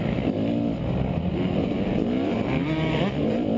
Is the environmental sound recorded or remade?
recorded